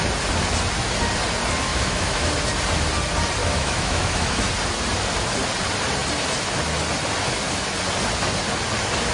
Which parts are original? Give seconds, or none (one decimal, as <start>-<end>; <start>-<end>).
0.0-1.7; 2.3-3.4; 4.5-9.1